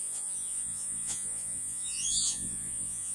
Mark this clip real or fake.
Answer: fake